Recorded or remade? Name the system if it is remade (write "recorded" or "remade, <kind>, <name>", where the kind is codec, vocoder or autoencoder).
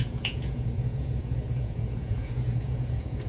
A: remade, vocoder, Vocos